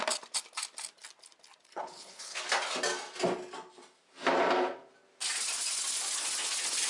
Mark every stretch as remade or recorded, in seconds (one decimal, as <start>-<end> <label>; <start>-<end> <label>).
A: 0.0-1.7 recorded; 1.7-2.4 remade; 2.4-6.9 recorded